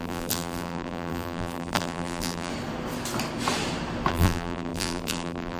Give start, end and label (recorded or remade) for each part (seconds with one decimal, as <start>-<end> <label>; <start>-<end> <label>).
0.0-2.5 remade; 2.5-4.1 recorded; 4.1-5.6 remade